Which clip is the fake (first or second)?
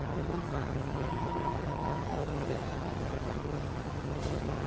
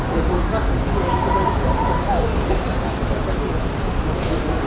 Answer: first